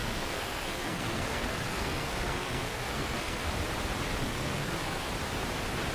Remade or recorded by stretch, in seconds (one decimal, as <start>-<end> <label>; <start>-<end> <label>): 0.0-3.5 remade; 3.5-4.2 recorded; 4.2-5.1 remade; 5.1-5.9 recorded